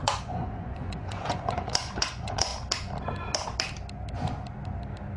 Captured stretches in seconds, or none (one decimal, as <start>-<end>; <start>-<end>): 2.5-5.2